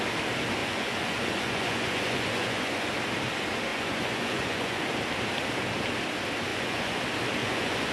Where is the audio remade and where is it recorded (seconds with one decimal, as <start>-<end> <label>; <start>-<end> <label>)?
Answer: 0.0-0.6 recorded; 0.6-2.9 remade; 2.9-3.7 recorded; 3.7-4.8 remade; 4.8-6.5 recorded; 6.5-7.0 remade; 7.0-7.4 recorded; 7.4-7.9 remade